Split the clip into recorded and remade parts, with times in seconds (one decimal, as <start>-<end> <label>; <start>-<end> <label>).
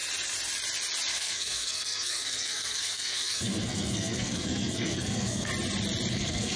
0.0-1.1 recorded; 1.1-5.5 remade; 5.5-6.1 recorded; 6.1-6.6 remade